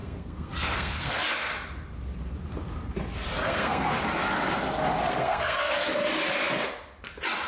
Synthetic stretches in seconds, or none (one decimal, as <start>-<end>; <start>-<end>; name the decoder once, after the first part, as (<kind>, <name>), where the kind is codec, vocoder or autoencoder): 0.0-1.2 (codec, SNAC); 3.4-4.0; 5.1-5.7